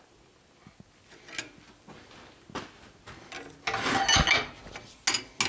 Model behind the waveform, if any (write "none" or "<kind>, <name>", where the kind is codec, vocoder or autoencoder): none